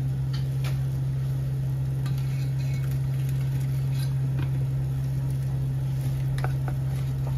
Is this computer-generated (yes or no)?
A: no